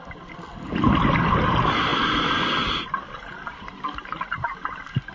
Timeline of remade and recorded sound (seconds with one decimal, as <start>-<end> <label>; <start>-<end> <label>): 0.0-5.1 recorded